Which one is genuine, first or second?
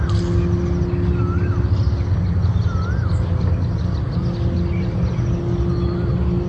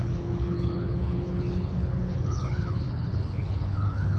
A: first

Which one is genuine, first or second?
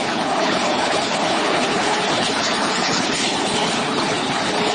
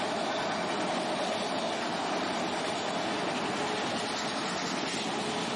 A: second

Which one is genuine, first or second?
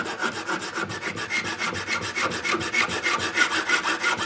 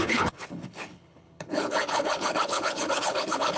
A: first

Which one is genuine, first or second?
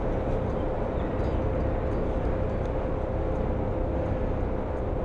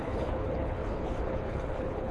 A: first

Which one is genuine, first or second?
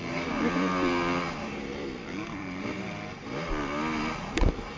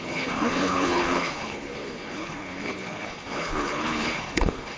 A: first